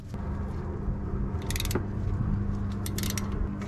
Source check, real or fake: real